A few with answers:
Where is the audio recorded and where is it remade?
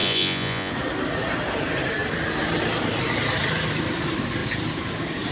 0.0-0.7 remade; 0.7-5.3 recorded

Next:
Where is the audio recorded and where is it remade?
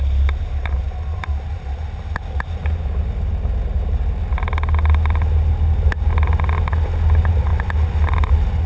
0.0-8.7 recorded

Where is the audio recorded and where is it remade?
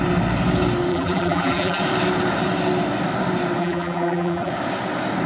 0.0-0.9 recorded; 0.9-1.8 remade; 1.8-3.6 recorded; 3.6-4.5 remade; 4.5-5.3 recorded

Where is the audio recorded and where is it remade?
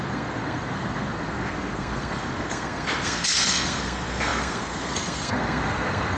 0.0-6.2 remade